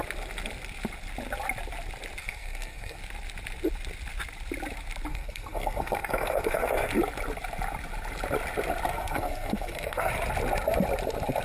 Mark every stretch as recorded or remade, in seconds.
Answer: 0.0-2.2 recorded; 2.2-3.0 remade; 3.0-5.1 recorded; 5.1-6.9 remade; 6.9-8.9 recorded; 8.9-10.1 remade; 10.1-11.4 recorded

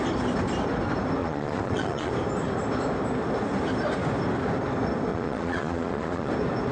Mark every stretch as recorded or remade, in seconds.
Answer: 0.0-1.2 recorded; 1.2-2.1 remade; 2.1-5.1 recorded; 5.1-6.3 remade; 6.3-6.7 recorded

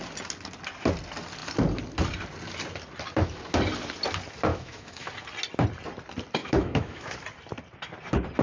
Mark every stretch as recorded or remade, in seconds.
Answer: 0.0-4.5 recorded; 4.5-5.1 remade; 5.1-6.4 recorded; 6.4-7.1 remade; 7.1-8.4 recorded

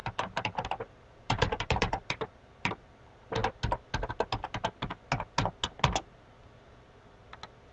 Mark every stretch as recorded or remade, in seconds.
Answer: 0.0-2.7 remade; 2.7-7.7 recorded

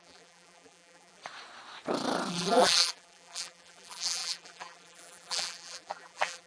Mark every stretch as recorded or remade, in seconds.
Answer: 0.0-1.2 remade; 1.2-2.3 recorded; 2.3-6.5 remade